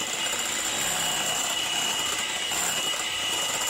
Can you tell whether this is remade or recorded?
remade